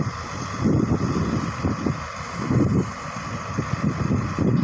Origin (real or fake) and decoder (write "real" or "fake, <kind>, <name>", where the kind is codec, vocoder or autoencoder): real